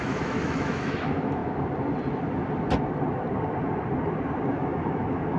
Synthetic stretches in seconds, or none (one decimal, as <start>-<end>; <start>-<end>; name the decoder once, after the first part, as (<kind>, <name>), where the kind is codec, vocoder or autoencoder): 0.0-1.4 (autoencoder, DAC-VAE); 4.5-5.4